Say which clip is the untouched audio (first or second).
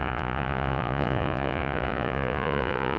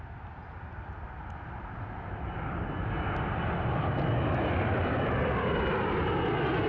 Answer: second